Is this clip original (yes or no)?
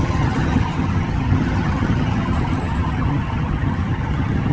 no